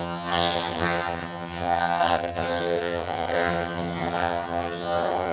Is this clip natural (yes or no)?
no